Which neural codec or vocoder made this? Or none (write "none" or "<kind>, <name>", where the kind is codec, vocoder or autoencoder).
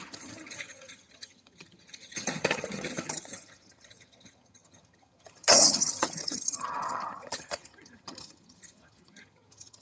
vocoder, HiFi-GAN